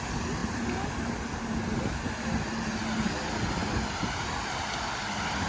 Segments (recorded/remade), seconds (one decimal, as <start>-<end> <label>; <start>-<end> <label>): 0.0-5.5 recorded